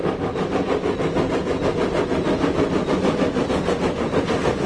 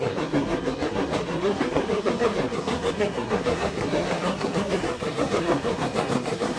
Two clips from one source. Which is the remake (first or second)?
second